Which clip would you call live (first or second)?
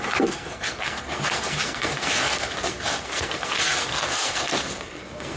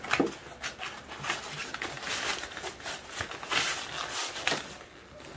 second